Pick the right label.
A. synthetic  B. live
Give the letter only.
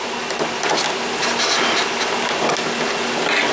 B